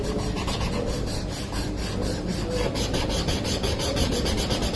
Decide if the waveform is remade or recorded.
recorded